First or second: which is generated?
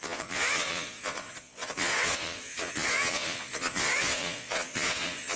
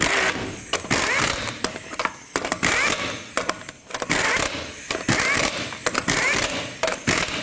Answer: first